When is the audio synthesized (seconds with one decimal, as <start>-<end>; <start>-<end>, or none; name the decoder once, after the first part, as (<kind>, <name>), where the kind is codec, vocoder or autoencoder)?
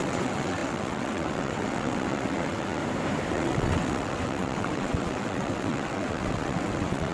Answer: 0.0-2.8 (vocoder, WaveNeXt); 3.3-7.1